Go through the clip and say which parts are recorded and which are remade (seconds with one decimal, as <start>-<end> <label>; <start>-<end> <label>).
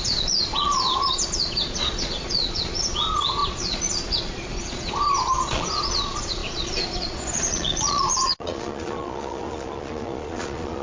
0.0-10.8 remade